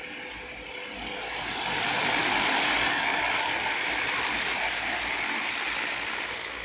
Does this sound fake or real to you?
real